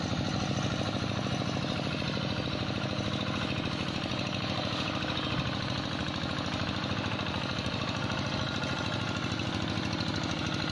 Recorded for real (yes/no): yes